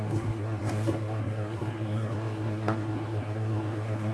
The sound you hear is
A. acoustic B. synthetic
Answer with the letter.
B